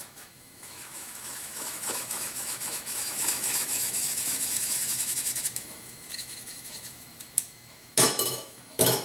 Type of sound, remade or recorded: remade